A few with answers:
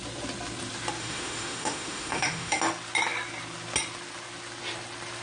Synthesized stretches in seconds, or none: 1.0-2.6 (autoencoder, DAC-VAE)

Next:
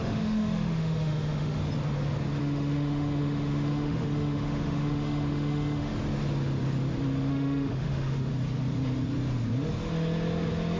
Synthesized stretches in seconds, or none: 0.0-1.6 (autoencoder, DAC-VAE); 2.4-5.9; 7.3-8.3

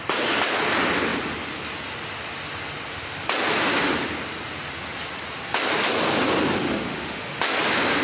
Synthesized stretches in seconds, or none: 6.6-7.4 (autoencoder, DAC-VAE)

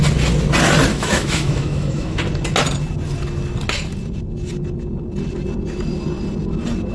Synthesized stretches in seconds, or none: 0.9-2.2 (autoencoder, DAC-VAE)